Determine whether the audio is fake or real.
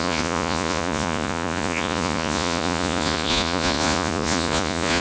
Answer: fake